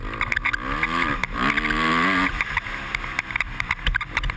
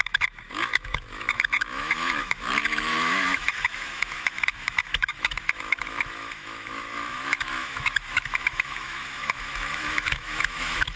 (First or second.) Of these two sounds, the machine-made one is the second